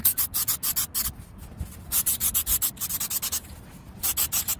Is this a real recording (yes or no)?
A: yes